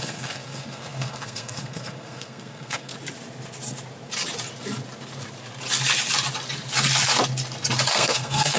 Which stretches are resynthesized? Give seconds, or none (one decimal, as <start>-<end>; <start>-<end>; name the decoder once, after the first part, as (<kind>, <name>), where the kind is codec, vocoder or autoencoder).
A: 0.0-2.9 (codec, SNAC); 7.9-8.6